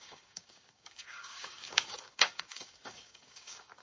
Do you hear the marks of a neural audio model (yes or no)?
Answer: yes